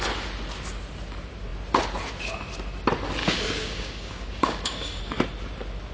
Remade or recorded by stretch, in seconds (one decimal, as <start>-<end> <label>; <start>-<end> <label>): 0.0-3.2 recorded; 3.2-5.0 remade; 5.0-5.9 recorded